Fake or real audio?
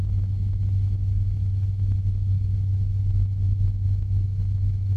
fake